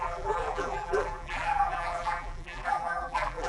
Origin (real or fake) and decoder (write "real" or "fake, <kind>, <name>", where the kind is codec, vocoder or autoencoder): fake, vocoder, BigVGAN v2